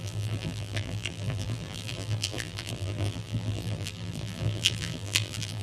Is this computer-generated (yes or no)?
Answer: yes